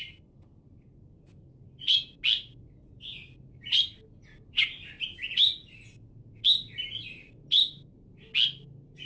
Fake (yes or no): no